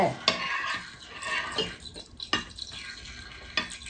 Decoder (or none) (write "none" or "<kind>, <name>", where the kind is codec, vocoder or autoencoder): none